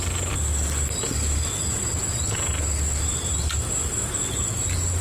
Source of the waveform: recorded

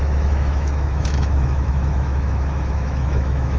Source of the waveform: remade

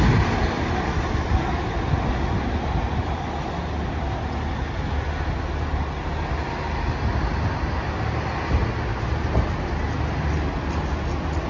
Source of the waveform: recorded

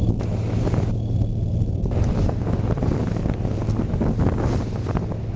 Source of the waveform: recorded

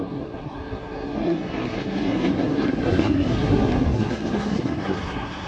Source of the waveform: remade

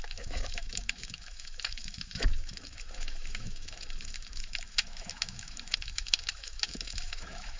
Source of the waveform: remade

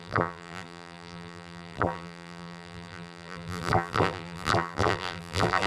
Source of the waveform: remade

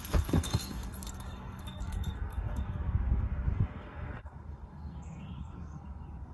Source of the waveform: remade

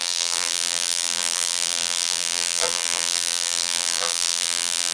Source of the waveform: remade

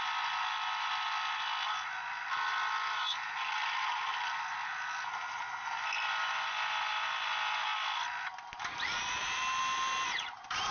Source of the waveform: recorded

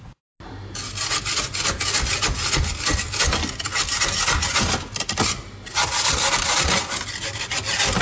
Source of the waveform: recorded